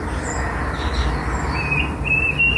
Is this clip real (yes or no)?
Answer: yes